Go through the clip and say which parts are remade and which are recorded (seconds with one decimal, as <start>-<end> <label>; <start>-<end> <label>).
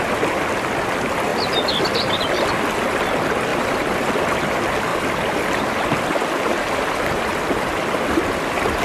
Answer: 0.0-3.5 recorded; 3.5-4.2 remade; 4.2-4.9 recorded; 4.9-8.4 remade; 8.4-8.8 recorded